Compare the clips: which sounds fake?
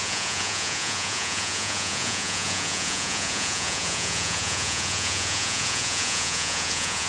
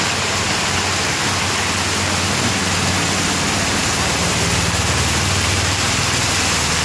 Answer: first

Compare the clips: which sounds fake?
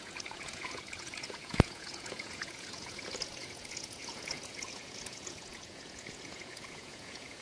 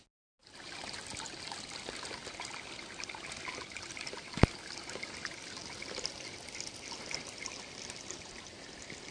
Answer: first